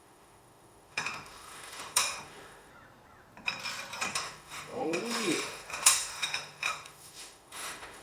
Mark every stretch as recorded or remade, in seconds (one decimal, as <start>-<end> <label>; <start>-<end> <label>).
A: 0.0-2.7 remade; 2.7-4.1 recorded; 4.1-8.0 remade